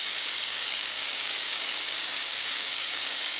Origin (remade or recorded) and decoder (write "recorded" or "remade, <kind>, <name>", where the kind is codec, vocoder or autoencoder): remade, codec, DAC